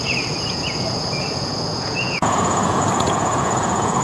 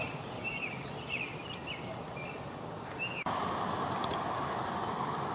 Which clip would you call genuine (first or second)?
second